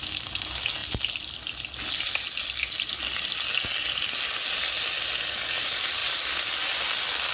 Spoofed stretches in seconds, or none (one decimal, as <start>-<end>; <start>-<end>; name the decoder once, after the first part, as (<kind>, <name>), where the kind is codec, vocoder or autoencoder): none